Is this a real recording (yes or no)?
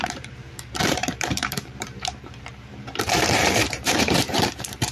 no